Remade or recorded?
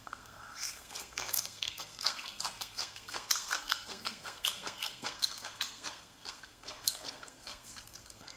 remade